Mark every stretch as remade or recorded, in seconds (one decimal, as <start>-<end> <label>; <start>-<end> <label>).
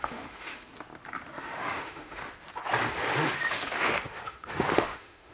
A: 0.0-0.7 remade; 0.7-1.4 recorded; 1.4-2.2 remade; 2.2-3.5 recorded; 3.5-5.3 remade